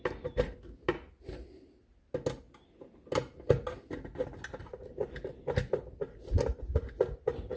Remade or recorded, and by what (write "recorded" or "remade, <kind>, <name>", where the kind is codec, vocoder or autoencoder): recorded